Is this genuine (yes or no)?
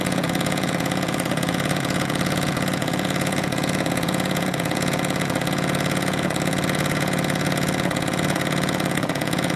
no